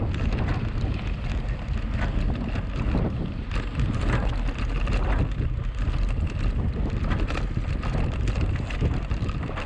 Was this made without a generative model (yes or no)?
yes